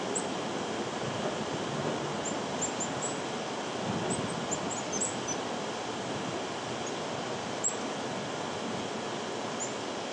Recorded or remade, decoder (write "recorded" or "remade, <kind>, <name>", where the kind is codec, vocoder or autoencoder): recorded